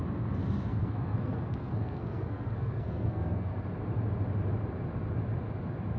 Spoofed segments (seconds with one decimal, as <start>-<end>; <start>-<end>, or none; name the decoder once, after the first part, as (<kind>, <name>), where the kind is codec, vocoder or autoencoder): 0.7-3.7 (codec, SNAC)